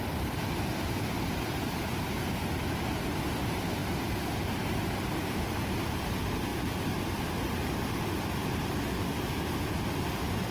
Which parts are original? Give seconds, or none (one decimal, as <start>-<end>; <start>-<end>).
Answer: 0.0-10.5